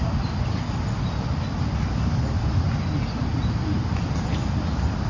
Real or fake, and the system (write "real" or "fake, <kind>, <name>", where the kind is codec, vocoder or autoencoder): real